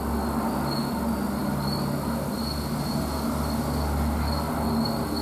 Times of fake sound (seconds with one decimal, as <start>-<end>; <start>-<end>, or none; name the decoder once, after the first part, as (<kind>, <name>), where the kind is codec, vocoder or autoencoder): none